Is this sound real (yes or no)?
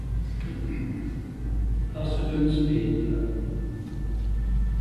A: yes